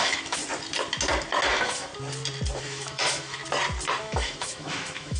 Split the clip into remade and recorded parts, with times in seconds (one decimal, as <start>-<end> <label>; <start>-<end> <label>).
0.0-0.4 remade; 0.4-1.5 recorded; 1.5-1.9 remade; 1.9-2.6 recorded; 2.6-3.4 remade; 3.4-4.0 recorded; 4.0-5.2 remade